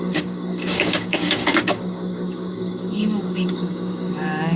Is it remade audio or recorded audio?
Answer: remade